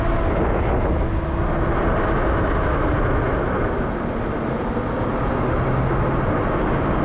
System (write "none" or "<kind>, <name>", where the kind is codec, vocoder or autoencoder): none